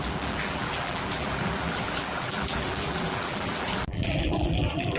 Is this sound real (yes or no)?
no